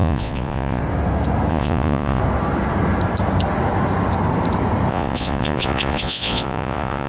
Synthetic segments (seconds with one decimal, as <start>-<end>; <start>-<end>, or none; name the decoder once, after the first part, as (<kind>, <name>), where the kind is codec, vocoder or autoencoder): 0.0-0.8 (vocoder, Vocos); 1.5-2.2; 4.9-7.1